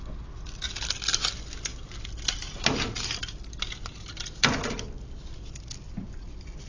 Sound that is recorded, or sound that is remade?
recorded